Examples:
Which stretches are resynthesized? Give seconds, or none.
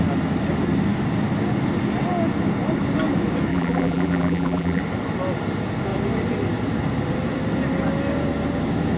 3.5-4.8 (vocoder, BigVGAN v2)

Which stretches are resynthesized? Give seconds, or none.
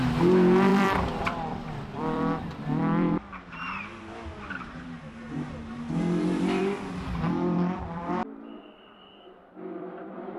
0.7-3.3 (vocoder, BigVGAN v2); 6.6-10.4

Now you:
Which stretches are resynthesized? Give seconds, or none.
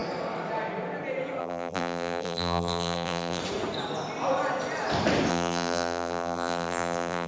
1.4-3.4 (vocoder, BigVGAN v2); 5.3-7.3